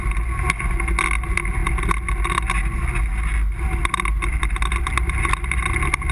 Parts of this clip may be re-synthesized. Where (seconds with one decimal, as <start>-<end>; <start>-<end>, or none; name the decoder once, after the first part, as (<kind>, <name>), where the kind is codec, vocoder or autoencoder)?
none